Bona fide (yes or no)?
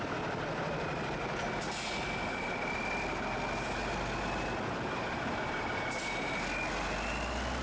yes